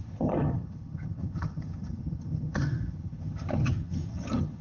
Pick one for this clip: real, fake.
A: fake